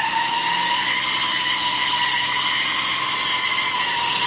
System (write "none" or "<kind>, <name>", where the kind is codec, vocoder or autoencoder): none